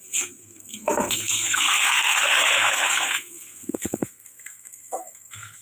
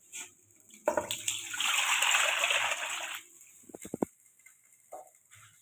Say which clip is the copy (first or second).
first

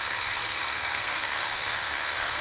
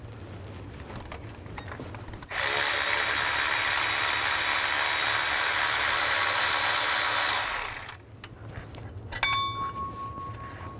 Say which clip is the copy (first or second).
first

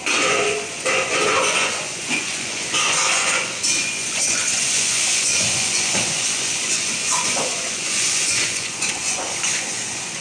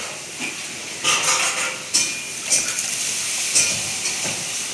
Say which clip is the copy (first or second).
first